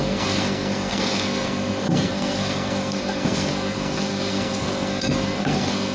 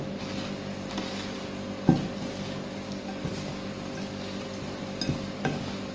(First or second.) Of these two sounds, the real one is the second